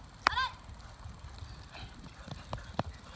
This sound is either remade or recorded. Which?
recorded